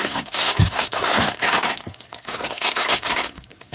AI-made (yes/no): yes